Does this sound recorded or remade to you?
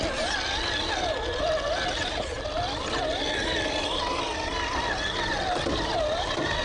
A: recorded